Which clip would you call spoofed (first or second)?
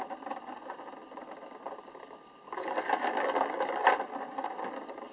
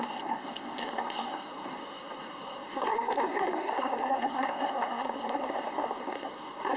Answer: second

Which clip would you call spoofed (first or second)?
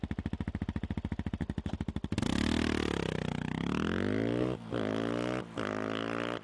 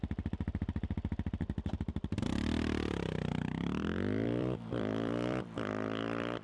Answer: second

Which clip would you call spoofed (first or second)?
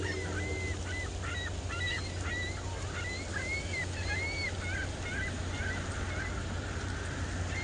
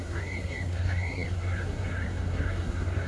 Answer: second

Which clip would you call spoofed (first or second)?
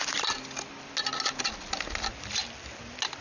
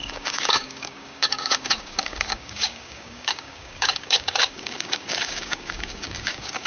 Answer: second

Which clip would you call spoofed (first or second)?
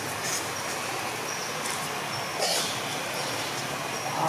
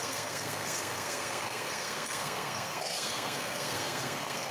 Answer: second